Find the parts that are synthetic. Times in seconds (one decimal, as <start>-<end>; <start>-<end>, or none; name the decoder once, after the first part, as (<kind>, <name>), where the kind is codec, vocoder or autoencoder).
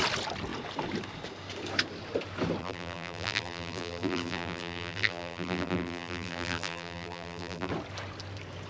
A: 2.6-7.7 (vocoder, BigVGAN v2)